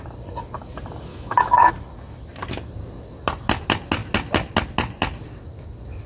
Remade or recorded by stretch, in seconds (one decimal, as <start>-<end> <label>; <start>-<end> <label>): 0.0-1.1 recorded; 1.1-1.7 remade; 1.7-6.1 recorded